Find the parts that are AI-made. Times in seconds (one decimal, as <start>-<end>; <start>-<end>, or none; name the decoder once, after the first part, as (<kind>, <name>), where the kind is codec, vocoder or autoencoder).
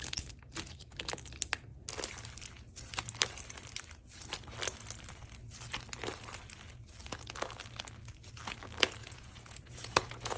9.0-10.4 (vocoder, Vocos)